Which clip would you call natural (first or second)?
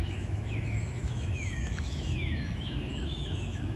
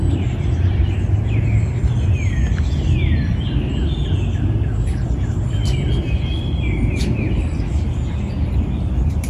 second